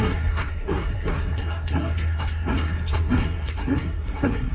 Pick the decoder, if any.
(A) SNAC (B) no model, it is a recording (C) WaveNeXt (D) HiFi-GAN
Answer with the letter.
A